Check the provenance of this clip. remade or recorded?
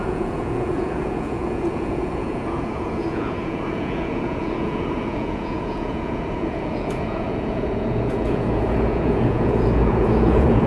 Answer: remade